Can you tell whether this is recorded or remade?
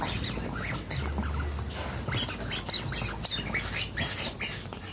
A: recorded